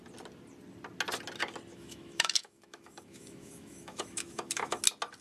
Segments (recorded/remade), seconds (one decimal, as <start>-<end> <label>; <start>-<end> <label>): 0.0-1.7 recorded; 1.7-4.8 remade; 4.8-5.2 recorded